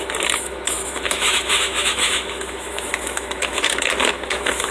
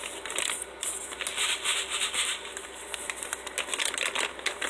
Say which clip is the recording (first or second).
second